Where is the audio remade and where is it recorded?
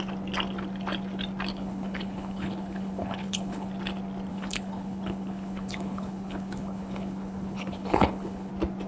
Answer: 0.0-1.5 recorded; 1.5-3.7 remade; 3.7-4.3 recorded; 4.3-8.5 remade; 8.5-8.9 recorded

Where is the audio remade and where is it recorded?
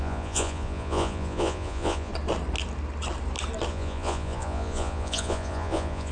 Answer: 0.0-2.1 remade; 2.1-3.7 recorded; 3.7-6.1 remade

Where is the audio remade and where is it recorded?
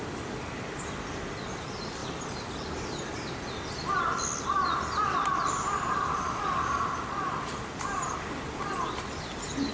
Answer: 0.0-9.7 recorded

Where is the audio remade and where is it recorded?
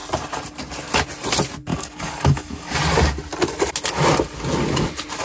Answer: 0.0-1.7 recorded; 1.7-2.7 remade; 2.7-5.2 recorded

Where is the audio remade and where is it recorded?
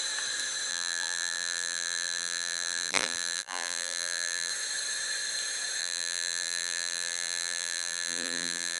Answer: 0.0-0.7 recorded; 0.7-4.5 remade; 4.5-5.8 recorded; 5.8-8.8 remade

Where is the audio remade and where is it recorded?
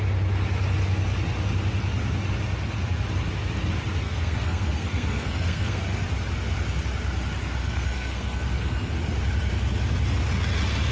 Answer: 0.0-4.0 recorded; 4.0-5.8 remade; 5.8-7.6 recorded; 7.6-8.9 remade; 8.9-10.9 recorded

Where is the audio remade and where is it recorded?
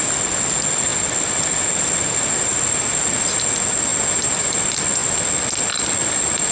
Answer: 0.0-6.5 recorded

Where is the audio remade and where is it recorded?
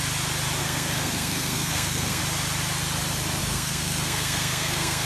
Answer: 0.0-0.6 recorded; 0.6-2.2 remade; 2.2-3.4 recorded; 3.4-5.1 remade